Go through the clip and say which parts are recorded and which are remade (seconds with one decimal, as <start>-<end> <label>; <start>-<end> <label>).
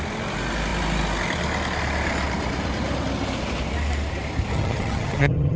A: 0.0-4.5 recorded; 4.5-5.6 remade